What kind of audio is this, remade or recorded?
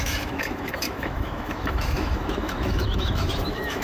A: remade